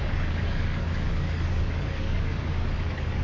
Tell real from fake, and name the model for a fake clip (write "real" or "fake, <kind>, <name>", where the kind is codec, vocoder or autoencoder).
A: fake, codec, DAC